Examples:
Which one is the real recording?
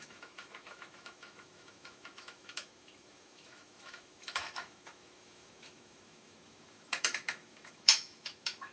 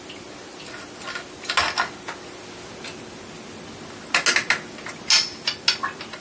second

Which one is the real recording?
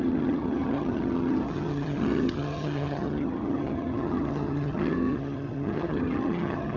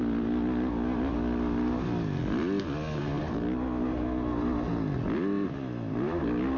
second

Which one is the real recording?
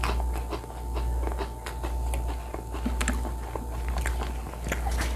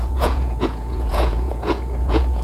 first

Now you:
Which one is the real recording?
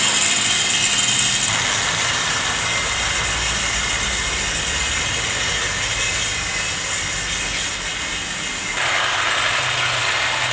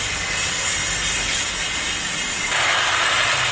first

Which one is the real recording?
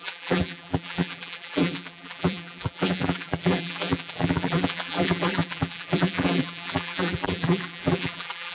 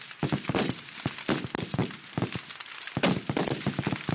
second